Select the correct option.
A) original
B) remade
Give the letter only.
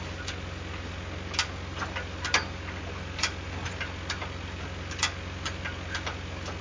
A